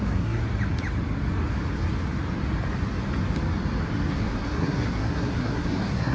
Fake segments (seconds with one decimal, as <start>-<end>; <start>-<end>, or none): 0.0-0.4; 4.1-6.1